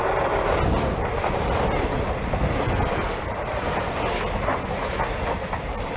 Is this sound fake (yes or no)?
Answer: no